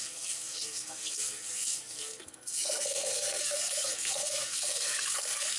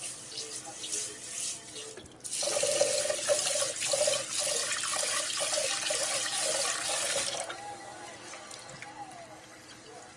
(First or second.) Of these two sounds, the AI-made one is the first